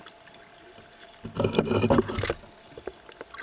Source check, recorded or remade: recorded